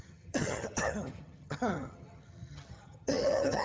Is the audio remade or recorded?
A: remade